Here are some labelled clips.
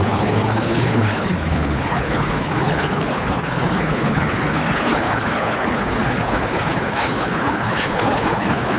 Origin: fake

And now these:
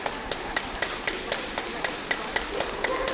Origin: real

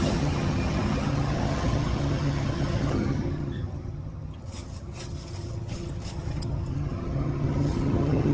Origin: fake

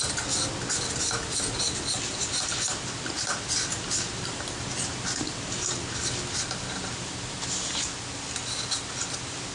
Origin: real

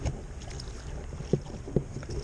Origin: real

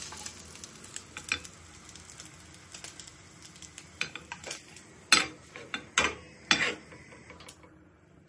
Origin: real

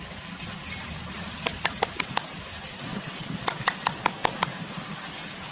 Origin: real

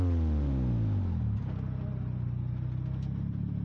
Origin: real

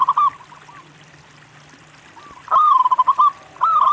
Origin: real